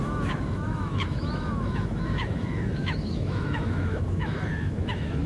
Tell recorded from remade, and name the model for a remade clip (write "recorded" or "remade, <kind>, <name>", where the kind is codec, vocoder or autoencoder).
remade, autoencoder, DAC-VAE